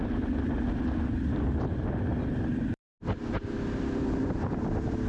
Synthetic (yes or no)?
yes